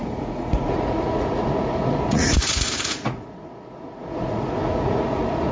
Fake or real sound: fake